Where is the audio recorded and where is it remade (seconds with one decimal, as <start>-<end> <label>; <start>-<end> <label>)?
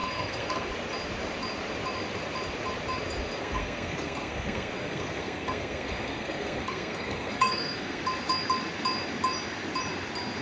0.0-0.7 remade; 0.7-3.4 recorded; 3.4-8.0 remade; 8.0-10.4 recorded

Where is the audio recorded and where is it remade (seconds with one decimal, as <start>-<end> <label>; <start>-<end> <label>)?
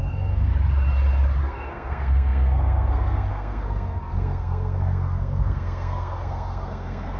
0.0-0.5 remade; 0.5-1.4 recorded; 1.4-7.2 remade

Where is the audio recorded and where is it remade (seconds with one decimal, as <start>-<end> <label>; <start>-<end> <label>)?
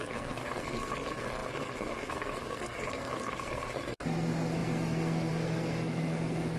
0.0-6.6 remade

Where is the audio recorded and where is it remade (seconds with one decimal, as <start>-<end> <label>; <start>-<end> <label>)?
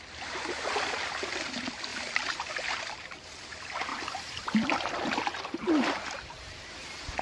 0.0-7.2 recorded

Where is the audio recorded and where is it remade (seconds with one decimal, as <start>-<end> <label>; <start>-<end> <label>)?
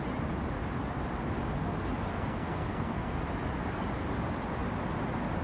0.0-2.1 recorded; 2.1-3.2 remade; 3.2-5.4 recorded